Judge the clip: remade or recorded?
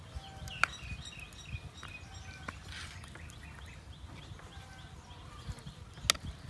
recorded